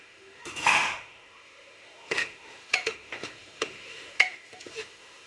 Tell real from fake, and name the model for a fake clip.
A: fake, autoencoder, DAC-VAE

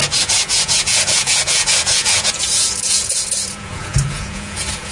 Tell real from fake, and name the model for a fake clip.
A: fake, vocoder, Vocos